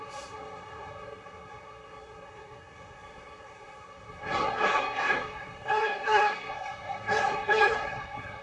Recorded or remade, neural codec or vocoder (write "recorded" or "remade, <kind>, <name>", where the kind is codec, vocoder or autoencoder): remade, codec, SNAC